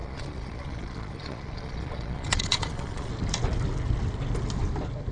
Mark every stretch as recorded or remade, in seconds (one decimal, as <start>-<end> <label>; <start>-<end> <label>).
0.0-3.1 remade; 3.1-5.1 recorded